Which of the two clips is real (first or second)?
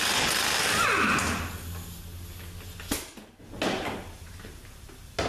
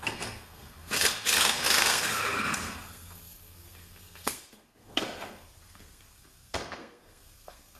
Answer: first